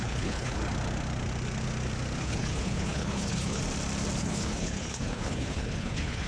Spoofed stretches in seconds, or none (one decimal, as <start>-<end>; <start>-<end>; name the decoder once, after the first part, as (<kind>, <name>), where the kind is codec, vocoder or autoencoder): 0.0-0.6 (codec, HILCodec); 2.2-3.6; 4.2-6.3